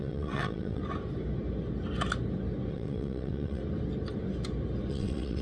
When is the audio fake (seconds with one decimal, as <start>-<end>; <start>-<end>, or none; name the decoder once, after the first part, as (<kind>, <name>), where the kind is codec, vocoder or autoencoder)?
0.0-0.8 (vocoder, WaveNeXt); 2.7-3.6; 4.9-5.4